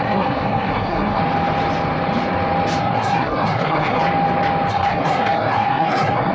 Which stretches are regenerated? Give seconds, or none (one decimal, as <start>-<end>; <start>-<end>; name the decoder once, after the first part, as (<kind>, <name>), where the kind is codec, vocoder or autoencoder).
0.0-1.2 (codec, SNAC); 2.8-4.0; 4.7-6.3